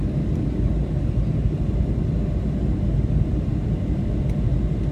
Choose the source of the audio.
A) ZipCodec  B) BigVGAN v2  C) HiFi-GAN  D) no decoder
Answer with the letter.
D